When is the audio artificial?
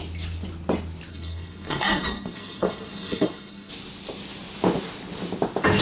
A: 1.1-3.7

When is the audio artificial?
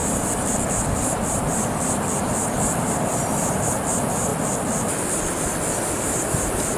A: 0.0-4.3; 5.7-6.8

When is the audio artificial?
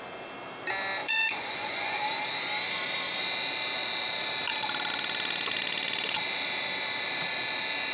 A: 1.0-2.0